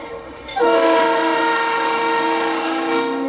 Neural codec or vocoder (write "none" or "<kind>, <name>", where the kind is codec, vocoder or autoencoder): autoencoder, DAC-VAE